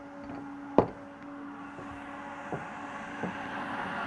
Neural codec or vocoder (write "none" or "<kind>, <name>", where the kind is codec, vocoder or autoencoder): none